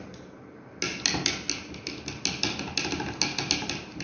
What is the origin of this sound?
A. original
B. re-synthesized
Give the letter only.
A